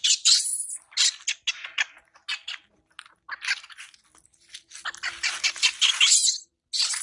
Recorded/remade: recorded